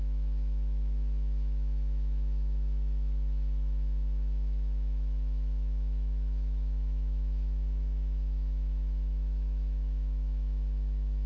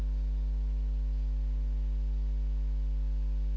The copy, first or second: first